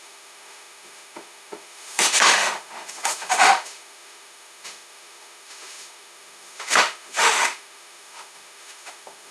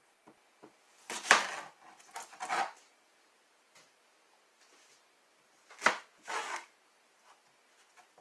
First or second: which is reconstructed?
first